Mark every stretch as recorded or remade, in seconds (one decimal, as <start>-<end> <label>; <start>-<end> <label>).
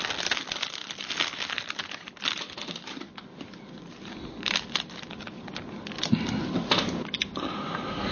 0.0-8.1 recorded